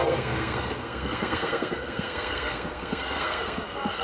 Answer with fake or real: fake